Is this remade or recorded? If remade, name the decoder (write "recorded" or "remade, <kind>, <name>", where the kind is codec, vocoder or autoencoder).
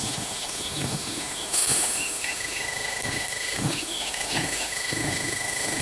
remade, autoencoder, DAC-VAE